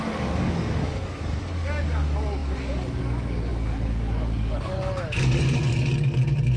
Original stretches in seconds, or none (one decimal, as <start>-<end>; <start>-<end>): none